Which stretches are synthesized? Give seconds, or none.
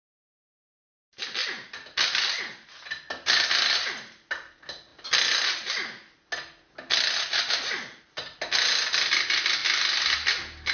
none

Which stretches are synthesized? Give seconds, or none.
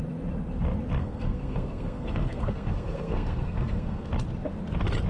1.0-4.1 (codec, SNAC)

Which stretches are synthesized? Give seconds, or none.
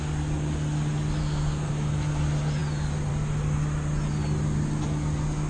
1.2-1.7 (codec, SNAC)